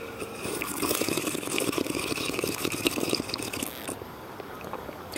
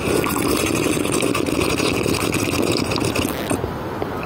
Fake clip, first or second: first